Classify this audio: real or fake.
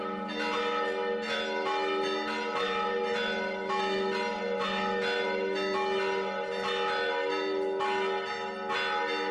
real